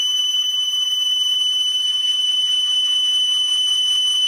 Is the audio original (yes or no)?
yes